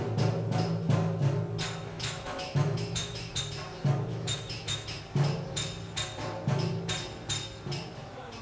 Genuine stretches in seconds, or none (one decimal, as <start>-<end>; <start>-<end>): 0.0-1.9; 3.4-4.1; 5.0-8.4